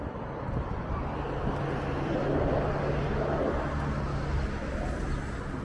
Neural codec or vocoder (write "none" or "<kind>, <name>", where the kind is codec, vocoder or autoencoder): none